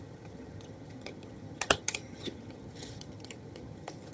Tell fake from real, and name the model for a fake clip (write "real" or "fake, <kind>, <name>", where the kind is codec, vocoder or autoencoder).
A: fake, vocoder, HiFi-GAN